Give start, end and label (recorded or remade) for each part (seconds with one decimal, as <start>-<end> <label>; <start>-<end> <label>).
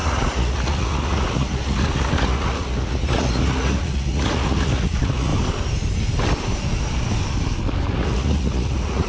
0.0-5.3 remade; 5.3-7.9 recorded; 7.9-9.1 remade